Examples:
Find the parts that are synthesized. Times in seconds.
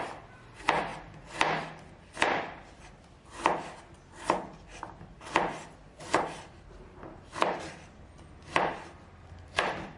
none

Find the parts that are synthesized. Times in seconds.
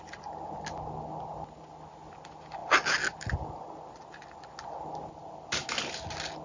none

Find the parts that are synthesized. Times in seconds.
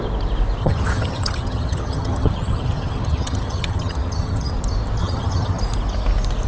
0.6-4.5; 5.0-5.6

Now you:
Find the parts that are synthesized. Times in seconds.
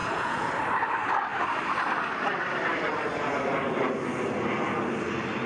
0.0-0.5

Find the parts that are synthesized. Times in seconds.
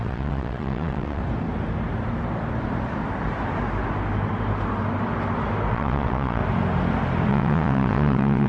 0.0-1.2; 5.7-6.4; 7.3-8.5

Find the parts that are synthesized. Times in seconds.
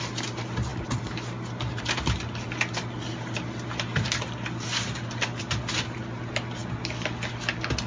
none